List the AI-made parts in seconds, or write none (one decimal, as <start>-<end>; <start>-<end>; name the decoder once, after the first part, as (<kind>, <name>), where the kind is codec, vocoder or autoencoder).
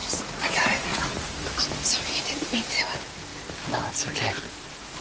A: 0.0-1.3 (vocoder, Vocos)